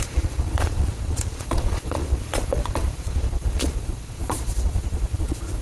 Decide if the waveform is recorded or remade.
remade